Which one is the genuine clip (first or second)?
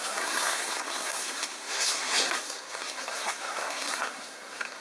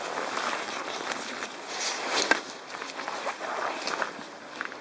second